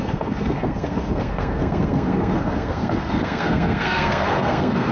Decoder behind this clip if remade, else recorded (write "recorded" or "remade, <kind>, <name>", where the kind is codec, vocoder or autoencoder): remade, codec, SNAC